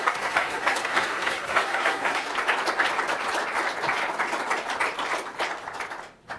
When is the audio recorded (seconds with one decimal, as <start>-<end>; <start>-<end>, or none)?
2.3-6.4